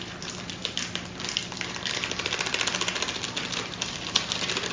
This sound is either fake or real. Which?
real